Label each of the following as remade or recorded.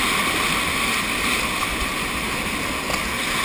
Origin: recorded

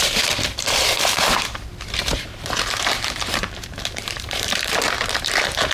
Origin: remade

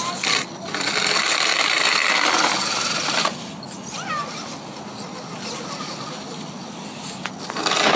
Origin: recorded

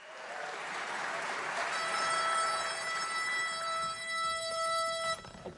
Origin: remade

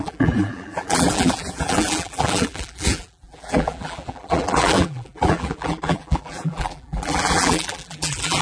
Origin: remade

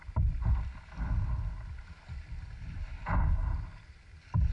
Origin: recorded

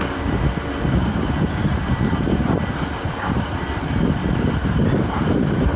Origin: remade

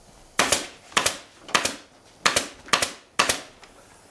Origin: recorded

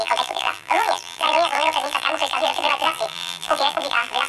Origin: remade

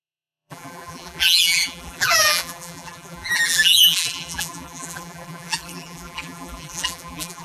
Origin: remade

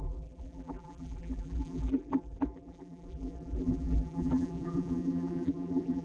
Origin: remade